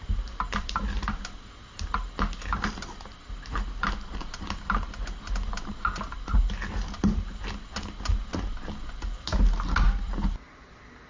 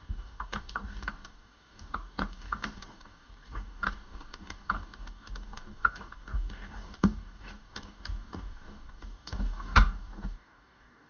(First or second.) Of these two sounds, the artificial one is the second